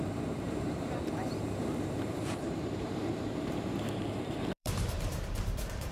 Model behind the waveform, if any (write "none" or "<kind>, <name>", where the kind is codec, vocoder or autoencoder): vocoder, BigVGAN v2